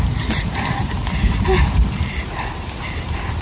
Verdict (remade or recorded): remade